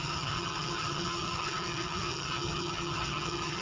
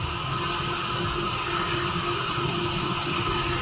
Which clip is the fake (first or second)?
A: first